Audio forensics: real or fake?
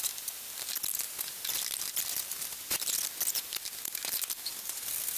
real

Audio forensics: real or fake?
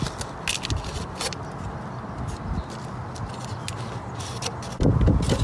real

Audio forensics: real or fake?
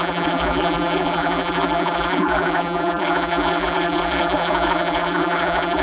fake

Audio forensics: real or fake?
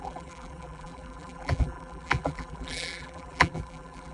fake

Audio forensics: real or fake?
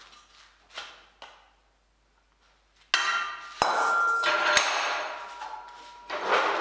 real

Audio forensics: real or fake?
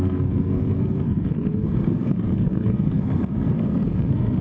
fake